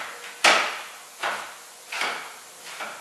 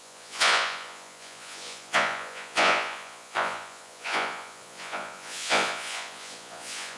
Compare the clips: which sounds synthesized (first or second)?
second